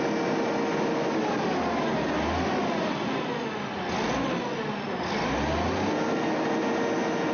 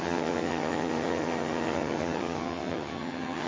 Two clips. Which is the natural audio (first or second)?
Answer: first